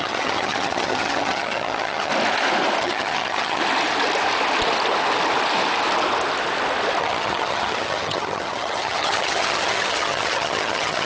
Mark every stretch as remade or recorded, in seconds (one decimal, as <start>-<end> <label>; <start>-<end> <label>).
0.0-2.1 remade; 2.1-2.8 recorded; 2.8-3.6 remade; 3.6-7.0 recorded; 7.0-11.1 remade